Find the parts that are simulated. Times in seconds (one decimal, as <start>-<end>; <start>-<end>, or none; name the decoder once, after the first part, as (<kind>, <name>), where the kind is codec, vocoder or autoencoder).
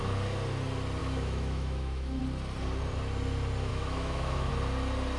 1.0-2.2 (autoencoder, DAC-VAE); 3.7-4.5